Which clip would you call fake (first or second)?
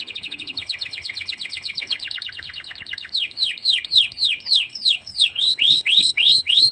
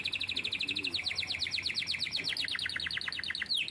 first